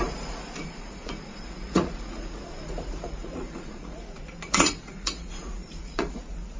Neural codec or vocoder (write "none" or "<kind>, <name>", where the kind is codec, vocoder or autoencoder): vocoder, Vocos